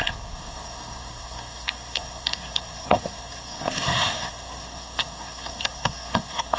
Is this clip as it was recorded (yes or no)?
no